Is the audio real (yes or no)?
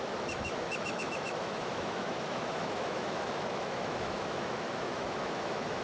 no